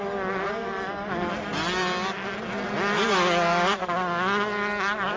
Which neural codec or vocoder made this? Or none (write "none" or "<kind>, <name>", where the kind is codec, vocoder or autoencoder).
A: none